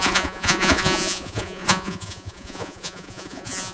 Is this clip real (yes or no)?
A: no